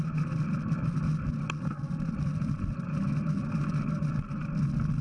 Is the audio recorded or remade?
recorded